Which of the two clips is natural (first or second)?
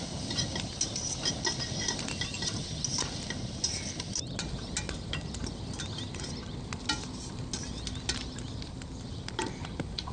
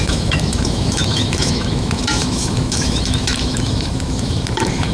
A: first